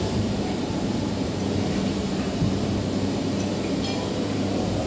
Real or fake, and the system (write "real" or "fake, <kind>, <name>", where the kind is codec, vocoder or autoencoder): fake, vocoder, BigVGAN v2